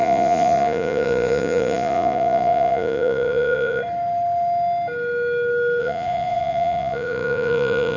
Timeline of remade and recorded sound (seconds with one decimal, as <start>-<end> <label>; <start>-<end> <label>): 0.0-3.8 remade; 3.8-5.8 recorded; 5.8-8.0 remade